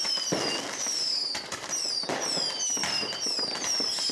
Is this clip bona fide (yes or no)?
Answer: yes